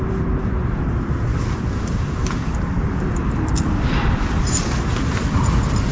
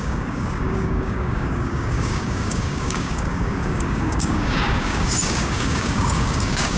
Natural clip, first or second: first